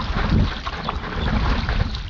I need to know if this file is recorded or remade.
recorded